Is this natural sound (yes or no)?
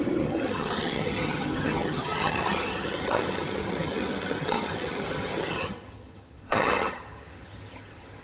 no